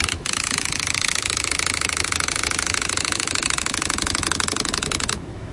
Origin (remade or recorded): remade